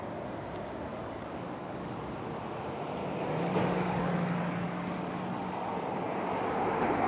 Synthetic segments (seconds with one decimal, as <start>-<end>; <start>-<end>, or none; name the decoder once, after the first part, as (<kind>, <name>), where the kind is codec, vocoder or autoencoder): 0.9-2.1 (codec, DAC); 3.0-5.7